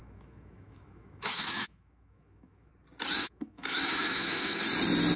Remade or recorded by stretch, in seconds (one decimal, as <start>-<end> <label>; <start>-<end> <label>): 0.0-2.7 remade; 2.7-3.2 recorded; 3.2-4.6 remade; 4.6-5.2 recorded